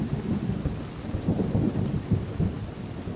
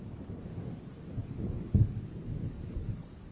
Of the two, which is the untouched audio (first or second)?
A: first